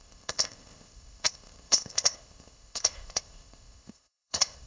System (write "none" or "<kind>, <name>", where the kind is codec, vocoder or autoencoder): codec, ZipCodec